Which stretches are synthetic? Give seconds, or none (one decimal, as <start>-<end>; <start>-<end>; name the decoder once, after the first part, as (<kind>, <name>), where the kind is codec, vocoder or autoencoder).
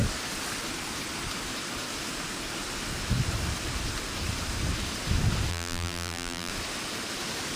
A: 5.5-6.5 (vocoder, BigVGAN v2)